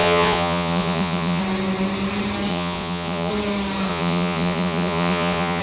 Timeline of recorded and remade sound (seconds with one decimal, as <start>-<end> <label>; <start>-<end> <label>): 0.0-1.4 remade; 1.4-2.5 recorded; 2.5-3.3 remade; 3.3-3.9 recorded; 3.9-5.6 remade